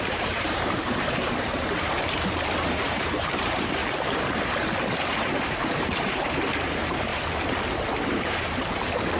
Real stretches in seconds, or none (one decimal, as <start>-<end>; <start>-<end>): 3.8-5.1; 7.1-8.0